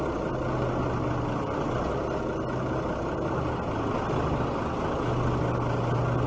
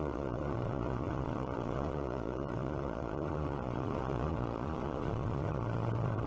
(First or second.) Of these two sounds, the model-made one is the second